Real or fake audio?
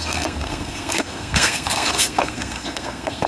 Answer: fake